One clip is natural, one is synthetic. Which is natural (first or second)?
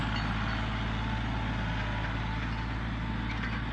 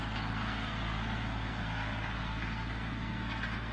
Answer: first